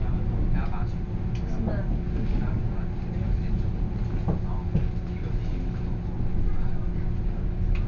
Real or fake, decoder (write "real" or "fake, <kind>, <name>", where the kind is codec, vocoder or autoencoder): real